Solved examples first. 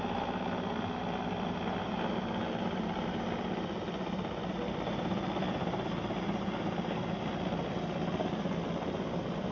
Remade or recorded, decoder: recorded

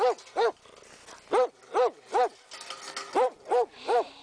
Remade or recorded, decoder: recorded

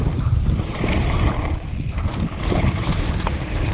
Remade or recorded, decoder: remade, vocoder, BigVGAN v2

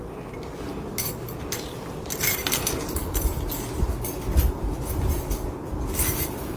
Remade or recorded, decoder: recorded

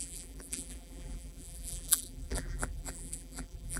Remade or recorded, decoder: remade, vocoder, BigVGAN v2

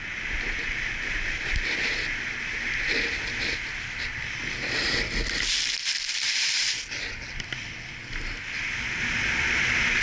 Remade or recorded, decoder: recorded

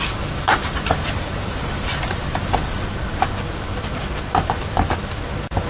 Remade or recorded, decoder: recorded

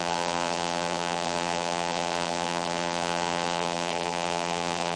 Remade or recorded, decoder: remade, vocoder, BigVGAN v2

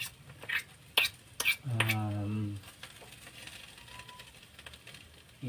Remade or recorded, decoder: recorded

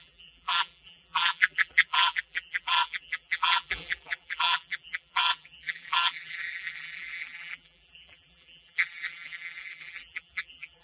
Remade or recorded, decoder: remade, vocoder, BigVGAN v2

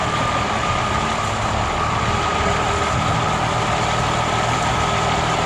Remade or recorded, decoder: recorded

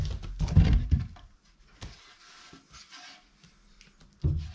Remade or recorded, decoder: recorded